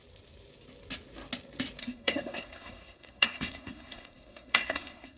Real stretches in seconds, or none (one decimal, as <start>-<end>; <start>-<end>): 0.0-1.8